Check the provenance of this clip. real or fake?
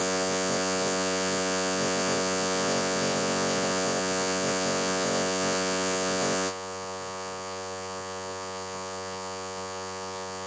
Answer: fake